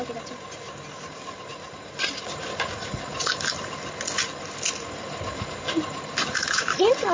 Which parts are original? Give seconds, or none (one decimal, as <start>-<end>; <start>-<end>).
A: 0.0-6.2